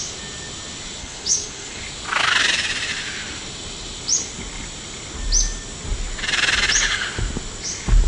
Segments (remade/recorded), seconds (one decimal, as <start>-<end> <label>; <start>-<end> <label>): 0.0-1.0 recorded; 1.0-1.8 remade; 1.8-8.1 recorded